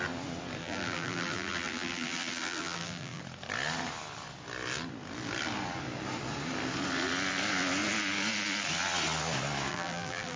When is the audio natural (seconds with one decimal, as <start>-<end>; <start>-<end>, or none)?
0.0-0.6; 3.2-9.7